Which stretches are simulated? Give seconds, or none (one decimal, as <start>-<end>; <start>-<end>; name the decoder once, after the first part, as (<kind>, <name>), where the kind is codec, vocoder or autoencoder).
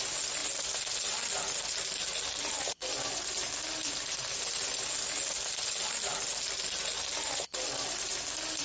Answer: none